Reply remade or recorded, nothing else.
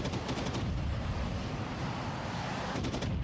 remade